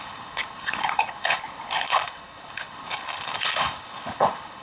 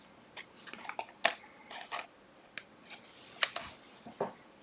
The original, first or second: second